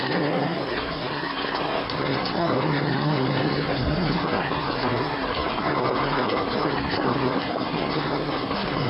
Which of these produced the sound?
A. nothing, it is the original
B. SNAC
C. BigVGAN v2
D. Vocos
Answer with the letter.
B